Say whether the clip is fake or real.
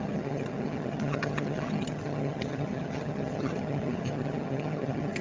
fake